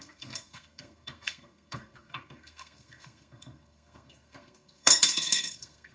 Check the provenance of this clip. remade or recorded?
remade